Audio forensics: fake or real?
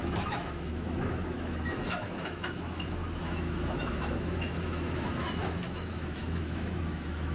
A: fake